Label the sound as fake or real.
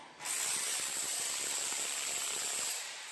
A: real